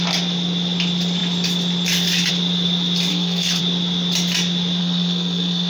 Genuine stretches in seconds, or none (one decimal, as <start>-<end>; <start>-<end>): 0.0-3.1; 3.6-4.8